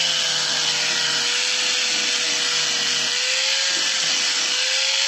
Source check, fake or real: real